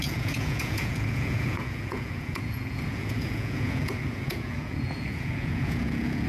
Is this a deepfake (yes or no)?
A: yes